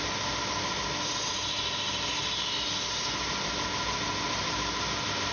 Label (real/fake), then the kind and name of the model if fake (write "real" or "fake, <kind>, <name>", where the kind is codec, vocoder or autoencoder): real